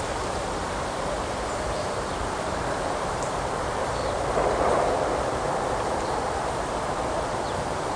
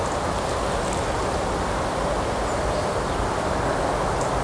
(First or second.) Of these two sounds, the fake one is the first